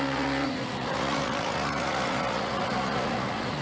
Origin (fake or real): fake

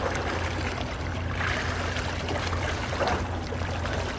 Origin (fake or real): real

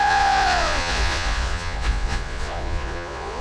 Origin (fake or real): fake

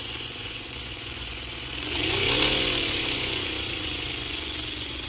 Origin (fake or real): fake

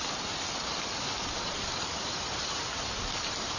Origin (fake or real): real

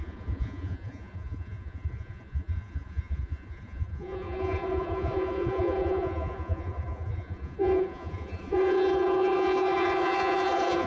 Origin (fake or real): fake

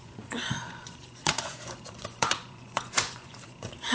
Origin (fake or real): fake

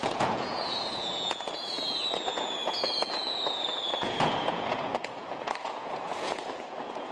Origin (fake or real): fake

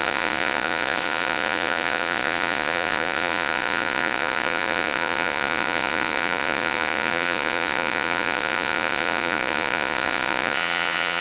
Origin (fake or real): fake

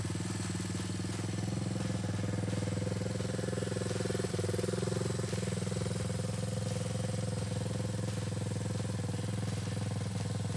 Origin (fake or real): real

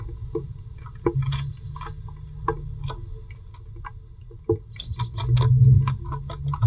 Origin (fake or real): real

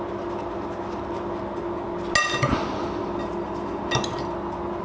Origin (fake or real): real